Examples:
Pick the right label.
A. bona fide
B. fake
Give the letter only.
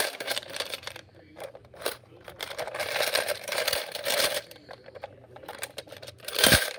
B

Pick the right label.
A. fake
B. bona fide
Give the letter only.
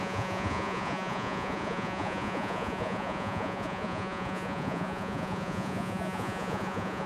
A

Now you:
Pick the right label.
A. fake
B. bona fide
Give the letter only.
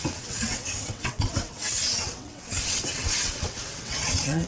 A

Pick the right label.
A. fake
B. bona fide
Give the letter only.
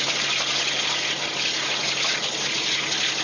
B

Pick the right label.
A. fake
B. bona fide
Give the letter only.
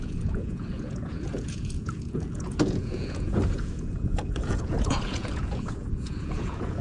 A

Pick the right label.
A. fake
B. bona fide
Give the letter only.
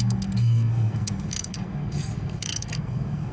A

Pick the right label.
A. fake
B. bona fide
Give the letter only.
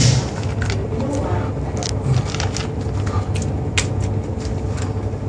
B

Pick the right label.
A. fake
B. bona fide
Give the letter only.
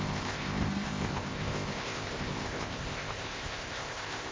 A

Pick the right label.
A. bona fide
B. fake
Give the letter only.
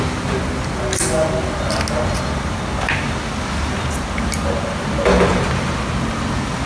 A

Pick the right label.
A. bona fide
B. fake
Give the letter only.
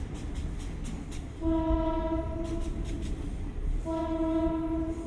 A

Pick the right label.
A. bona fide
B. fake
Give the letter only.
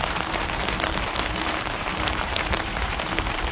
B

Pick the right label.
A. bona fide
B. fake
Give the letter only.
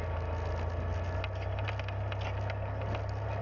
A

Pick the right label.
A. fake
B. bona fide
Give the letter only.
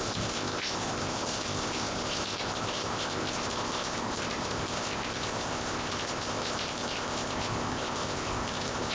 A